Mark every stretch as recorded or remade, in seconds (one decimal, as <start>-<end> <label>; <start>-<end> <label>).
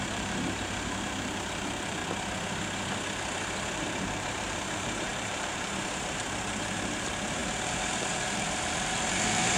0.0-2.0 remade; 2.0-3.7 recorded; 3.7-9.6 remade